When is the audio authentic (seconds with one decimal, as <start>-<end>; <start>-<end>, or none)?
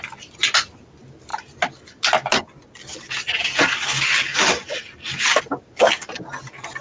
0.0-6.8